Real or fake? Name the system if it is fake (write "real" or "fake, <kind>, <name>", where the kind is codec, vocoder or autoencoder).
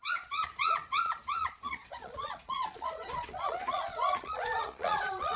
fake, vocoder, Vocos